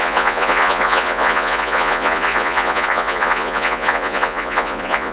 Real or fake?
fake